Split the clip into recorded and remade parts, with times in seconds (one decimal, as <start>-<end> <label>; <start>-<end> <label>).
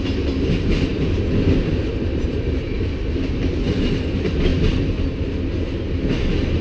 0.0-4.5 recorded; 4.5-5.3 remade; 5.3-6.6 recorded